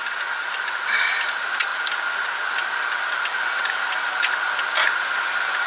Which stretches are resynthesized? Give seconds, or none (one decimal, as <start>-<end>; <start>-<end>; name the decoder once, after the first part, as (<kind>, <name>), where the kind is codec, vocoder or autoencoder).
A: none